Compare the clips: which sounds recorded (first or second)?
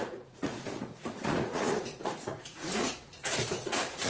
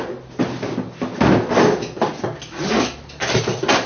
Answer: second